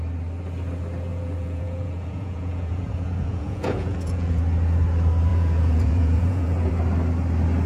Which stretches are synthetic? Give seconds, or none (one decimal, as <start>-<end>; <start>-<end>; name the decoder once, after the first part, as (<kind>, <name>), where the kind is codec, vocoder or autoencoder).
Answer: 1.1-4.4 (vocoder, Vocos); 5.3-6.7

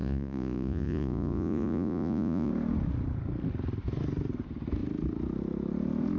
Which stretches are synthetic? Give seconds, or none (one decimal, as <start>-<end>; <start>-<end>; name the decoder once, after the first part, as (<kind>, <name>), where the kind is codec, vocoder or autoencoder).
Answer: 0.0-2.5 (vocoder, Vocos)